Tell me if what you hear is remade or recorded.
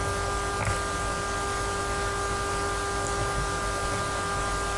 recorded